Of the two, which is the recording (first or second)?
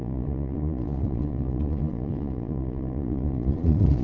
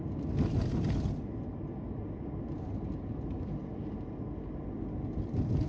second